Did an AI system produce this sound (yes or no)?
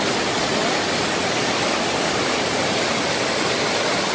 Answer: no